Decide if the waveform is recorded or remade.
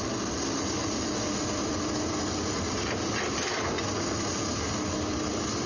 recorded